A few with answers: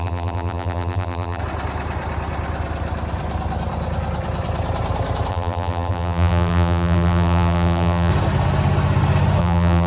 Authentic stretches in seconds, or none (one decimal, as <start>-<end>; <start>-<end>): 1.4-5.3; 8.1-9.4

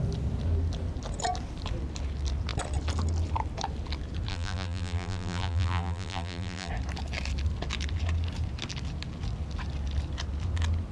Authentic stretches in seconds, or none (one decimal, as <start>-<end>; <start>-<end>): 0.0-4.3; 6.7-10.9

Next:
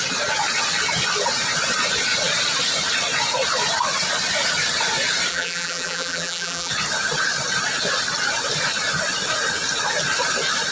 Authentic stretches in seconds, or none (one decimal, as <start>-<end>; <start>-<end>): 0.0-5.3; 6.7-10.7

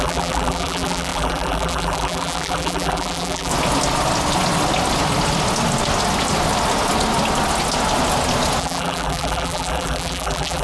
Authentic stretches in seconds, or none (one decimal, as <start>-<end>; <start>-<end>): 3.5-8.6

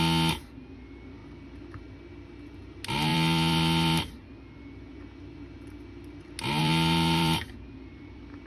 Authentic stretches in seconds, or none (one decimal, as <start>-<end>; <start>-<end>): 0.0-3.1; 4.3-6.6

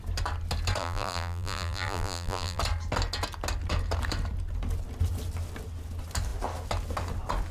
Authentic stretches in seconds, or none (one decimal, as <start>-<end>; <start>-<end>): 0.0-0.8; 2.6-7.5